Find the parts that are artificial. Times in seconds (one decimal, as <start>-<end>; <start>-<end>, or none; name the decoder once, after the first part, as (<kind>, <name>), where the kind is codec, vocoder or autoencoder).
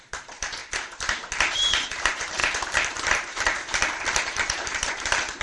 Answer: 0.0-0.6 (vocoder, BigVGAN v2); 1.9-5.4